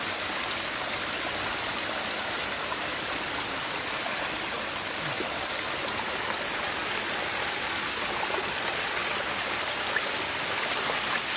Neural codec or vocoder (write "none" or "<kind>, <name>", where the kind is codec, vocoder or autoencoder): none